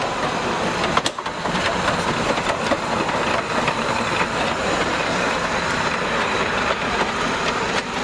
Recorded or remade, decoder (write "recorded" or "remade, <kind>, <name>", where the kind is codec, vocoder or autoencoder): recorded